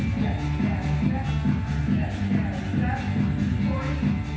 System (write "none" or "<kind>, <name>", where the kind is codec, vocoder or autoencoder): none